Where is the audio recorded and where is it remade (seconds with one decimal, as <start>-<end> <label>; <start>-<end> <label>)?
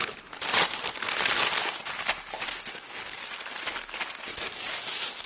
0.0-2.7 recorded; 2.7-3.2 remade; 3.2-4.7 recorded; 4.7-5.3 remade